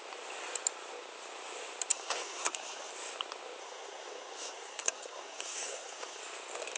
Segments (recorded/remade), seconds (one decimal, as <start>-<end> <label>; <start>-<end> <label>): 0.0-1.9 recorded; 1.9-2.9 remade; 2.9-3.6 recorded; 3.6-6.2 remade; 6.2-6.8 recorded